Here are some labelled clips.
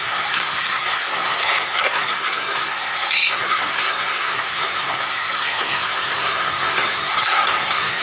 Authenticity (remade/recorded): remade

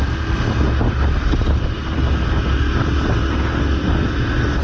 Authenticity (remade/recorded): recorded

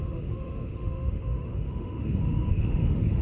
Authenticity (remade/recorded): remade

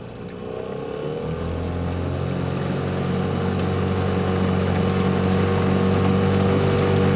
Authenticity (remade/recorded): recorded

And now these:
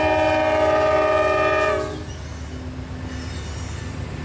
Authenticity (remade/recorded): recorded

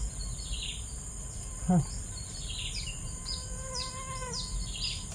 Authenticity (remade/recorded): recorded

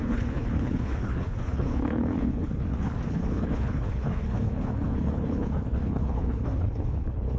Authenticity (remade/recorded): remade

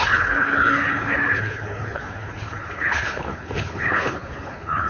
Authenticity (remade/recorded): remade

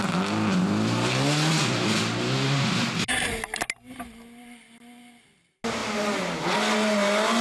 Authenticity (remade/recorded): recorded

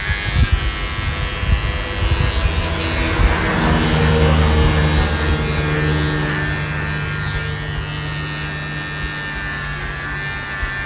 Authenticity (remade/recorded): recorded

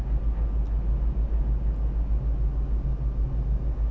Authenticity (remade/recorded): recorded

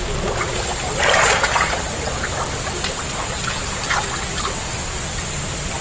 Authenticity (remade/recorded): recorded